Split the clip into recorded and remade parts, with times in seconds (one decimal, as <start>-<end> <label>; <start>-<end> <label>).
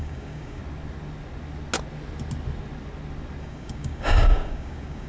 0.0-0.6 remade; 0.6-3.4 recorded; 3.4-5.1 remade